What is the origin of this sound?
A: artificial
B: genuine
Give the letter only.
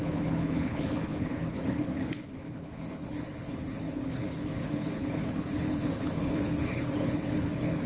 A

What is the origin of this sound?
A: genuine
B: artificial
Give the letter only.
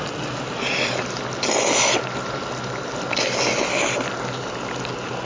A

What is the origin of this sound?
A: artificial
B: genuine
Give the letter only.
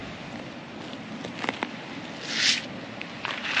B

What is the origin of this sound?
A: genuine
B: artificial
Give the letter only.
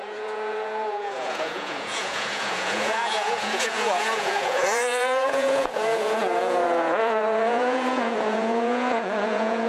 B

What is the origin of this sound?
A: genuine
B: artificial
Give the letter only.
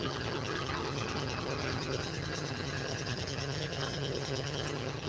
B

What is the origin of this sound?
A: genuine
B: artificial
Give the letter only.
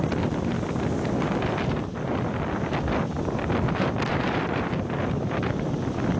B